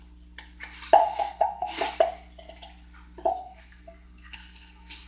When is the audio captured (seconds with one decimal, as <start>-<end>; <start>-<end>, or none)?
0.0-1.0; 1.8-3.3